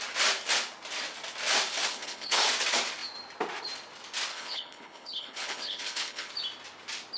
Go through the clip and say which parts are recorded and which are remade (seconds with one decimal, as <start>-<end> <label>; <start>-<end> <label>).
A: 0.0-1.9 recorded; 1.9-2.4 remade; 2.4-4.3 recorded; 4.3-6.3 remade; 6.3-7.2 recorded